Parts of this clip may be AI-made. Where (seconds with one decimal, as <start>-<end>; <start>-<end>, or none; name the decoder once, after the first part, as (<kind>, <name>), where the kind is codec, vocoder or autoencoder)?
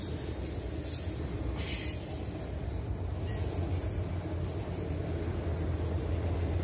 none